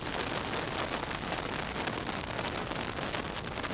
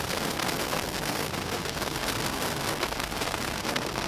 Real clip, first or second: first